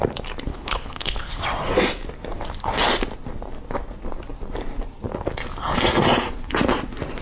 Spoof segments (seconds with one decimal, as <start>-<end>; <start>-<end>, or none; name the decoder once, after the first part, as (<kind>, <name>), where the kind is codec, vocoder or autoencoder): 0.5-1.4 (codec, HILCodec)